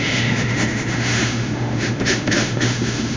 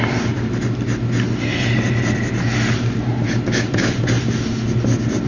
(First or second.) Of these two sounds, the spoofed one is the first